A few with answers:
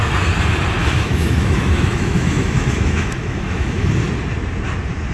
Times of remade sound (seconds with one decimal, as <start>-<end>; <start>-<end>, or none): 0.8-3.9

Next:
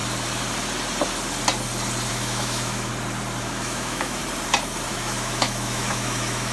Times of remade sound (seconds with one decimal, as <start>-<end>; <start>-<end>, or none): 2.1-2.9; 3.4-4.2; 4.9-6.5

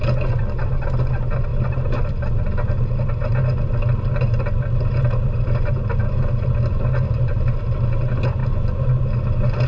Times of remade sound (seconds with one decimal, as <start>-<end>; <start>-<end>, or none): none